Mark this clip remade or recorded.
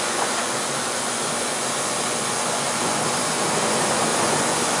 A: remade